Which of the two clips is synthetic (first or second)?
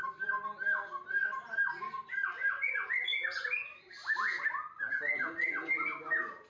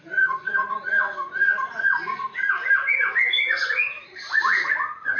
second